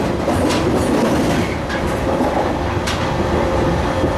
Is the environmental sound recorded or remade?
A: recorded